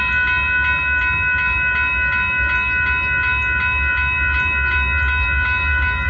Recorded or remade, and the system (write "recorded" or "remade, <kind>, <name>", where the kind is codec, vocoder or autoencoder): recorded